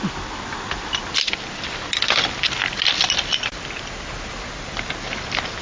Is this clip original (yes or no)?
yes